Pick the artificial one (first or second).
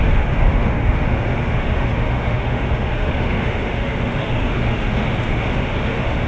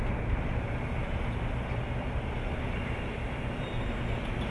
first